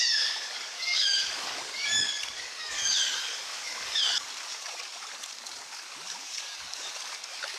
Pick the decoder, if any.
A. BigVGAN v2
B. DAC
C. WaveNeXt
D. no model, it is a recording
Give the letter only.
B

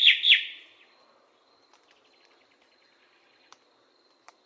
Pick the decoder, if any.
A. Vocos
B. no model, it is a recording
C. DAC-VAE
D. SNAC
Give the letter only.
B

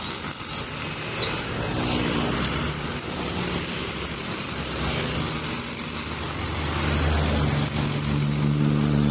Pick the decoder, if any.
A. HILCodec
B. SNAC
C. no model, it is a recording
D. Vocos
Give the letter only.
C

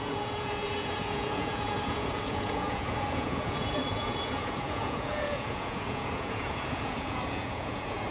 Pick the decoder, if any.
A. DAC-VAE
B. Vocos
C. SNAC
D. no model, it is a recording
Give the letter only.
B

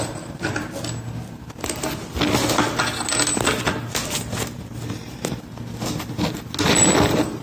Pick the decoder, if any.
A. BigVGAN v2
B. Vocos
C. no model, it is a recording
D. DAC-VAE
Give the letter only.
C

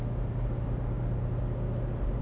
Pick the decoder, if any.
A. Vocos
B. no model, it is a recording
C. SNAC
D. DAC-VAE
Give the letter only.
B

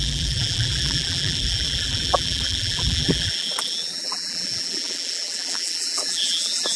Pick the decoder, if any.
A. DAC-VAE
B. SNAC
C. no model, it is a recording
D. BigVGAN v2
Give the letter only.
D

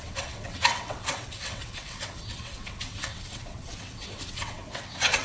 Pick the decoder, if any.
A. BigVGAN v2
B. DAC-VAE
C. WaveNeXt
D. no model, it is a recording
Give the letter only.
C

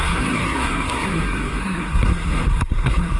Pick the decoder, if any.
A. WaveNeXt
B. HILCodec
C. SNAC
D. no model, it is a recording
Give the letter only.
C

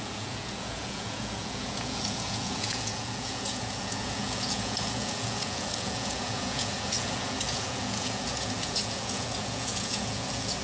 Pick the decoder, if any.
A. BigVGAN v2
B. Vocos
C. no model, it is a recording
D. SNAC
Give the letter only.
B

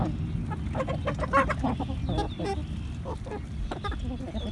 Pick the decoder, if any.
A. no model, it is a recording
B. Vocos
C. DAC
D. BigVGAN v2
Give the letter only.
A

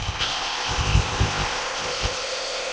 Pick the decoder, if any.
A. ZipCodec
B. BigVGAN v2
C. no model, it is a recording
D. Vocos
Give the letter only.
A